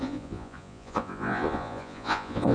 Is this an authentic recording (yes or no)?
no